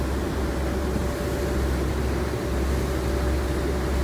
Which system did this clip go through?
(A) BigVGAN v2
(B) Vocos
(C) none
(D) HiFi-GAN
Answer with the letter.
C